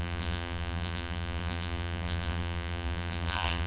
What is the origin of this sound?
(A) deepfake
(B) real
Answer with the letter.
A